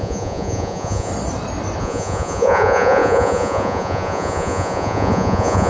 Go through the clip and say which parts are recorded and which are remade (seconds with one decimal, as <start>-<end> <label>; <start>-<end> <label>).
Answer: 0.0-1.1 remade; 1.1-1.8 recorded; 1.8-5.7 remade

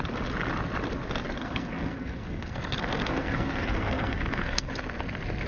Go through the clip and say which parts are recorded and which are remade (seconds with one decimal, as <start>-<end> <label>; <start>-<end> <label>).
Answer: 0.0-1.4 recorded; 1.4-4.7 remade; 4.7-5.5 recorded

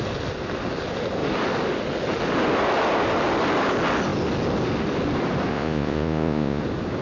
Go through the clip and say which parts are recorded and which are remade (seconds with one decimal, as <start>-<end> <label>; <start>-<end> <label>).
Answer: 0.0-5.5 recorded; 5.5-6.6 remade; 6.6-7.0 recorded

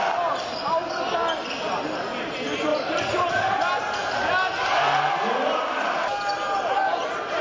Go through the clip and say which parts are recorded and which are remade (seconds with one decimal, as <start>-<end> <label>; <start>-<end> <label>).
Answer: 0.0-2.7 recorded; 2.7-3.3 remade; 3.3-7.4 recorded

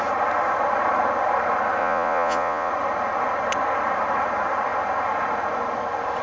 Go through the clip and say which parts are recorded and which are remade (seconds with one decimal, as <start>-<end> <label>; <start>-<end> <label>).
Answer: 0.0-1.8 recorded; 1.8-2.7 remade; 2.7-6.2 recorded